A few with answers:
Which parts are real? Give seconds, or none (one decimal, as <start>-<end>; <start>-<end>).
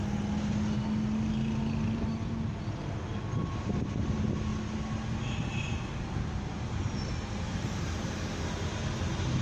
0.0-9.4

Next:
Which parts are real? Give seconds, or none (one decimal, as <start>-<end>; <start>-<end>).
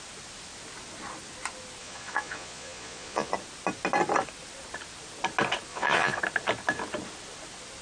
0.0-1.8; 3.3-5.7; 6.2-7.8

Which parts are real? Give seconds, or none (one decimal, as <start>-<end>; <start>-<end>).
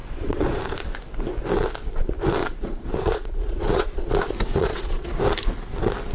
0.6-2.4; 4.2-4.7; 5.2-6.1